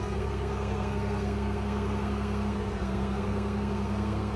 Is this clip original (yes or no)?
no